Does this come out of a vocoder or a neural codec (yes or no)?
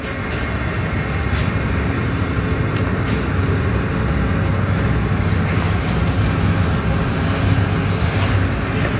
no